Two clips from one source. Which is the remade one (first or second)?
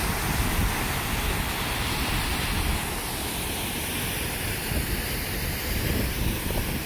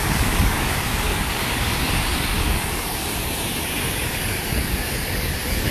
second